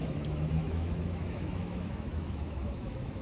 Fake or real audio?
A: fake